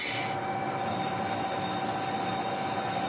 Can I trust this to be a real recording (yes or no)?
yes